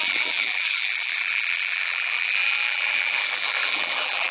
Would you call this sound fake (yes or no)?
yes